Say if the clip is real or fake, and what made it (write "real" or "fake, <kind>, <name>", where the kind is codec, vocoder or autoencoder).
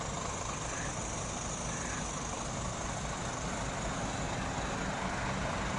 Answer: real